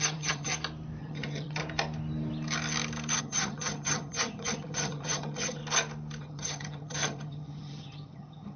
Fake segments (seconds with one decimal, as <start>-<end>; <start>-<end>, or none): 0.0-0.5; 1.0-1.6; 3.2-5.6; 6.2-8.6